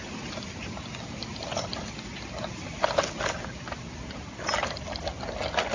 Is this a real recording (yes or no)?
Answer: yes